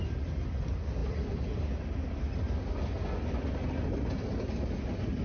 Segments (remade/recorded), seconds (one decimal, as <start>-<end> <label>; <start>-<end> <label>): 0.0-5.2 recorded